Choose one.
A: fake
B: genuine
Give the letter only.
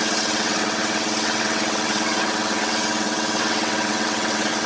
A